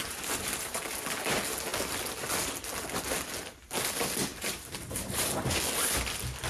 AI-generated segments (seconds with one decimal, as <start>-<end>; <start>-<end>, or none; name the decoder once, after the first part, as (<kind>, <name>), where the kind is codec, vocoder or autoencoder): 0.0-0.8 (vocoder, BigVGAN v2); 4.3-5.5